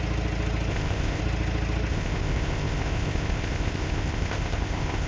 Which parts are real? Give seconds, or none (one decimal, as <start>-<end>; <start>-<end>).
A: 0.0-0.7; 1.2-1.9